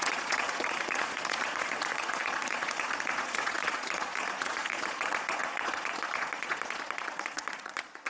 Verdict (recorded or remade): remade